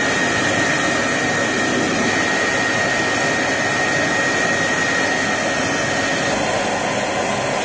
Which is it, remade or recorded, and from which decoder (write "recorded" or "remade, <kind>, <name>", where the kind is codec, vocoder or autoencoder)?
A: recorded